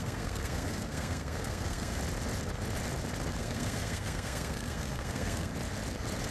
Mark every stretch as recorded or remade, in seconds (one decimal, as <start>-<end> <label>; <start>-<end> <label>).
0.0-2.0 remade; 2.0-3.4 recorded; 3.4-5.5 remade; 5.5-6.3 recorded